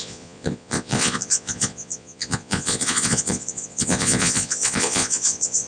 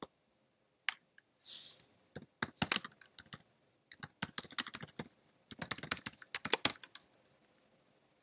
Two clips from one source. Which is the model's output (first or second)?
first